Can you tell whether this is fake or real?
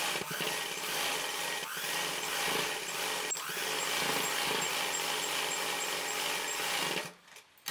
real